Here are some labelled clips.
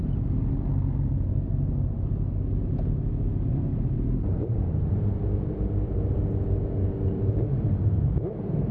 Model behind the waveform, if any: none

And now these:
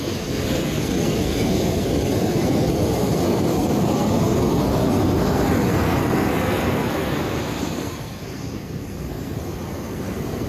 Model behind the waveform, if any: codec, SNAC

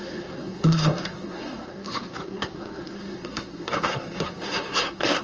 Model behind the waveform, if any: codec, SNAC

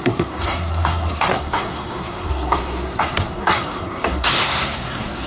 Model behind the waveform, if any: codec, SNAC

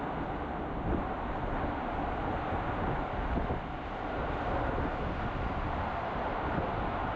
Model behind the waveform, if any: none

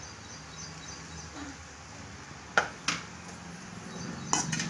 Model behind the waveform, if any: none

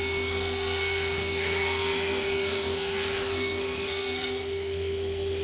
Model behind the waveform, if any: codec, SNAC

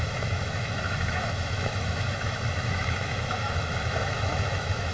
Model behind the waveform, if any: autoencoder, DAC-VAE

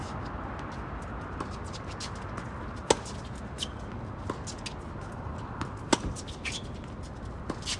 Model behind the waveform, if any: none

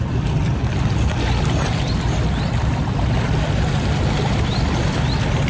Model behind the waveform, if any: none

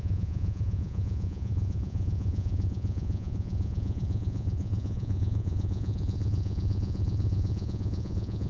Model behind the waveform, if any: vocoder, Vocos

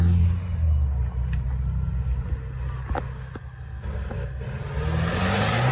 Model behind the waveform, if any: none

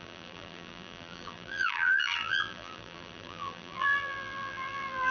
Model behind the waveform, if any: vocoder, BigVGAN v2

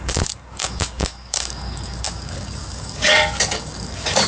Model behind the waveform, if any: codec, DAC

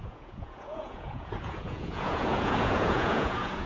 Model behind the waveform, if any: vocoder, Vocos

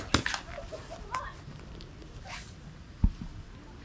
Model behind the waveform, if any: none